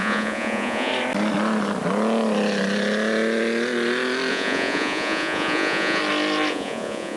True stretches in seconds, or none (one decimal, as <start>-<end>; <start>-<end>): 0.9-4.3; 6.0-6.5